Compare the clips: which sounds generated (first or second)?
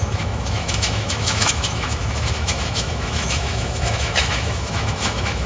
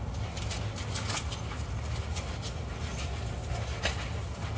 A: first